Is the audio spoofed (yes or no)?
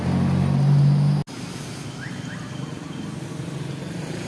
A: no